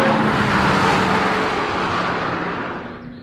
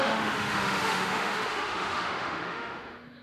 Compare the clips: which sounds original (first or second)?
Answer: first